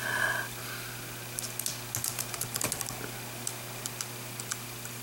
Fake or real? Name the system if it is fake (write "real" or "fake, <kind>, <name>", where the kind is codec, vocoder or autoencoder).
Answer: real